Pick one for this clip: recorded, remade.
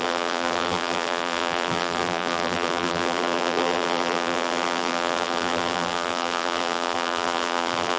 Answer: remade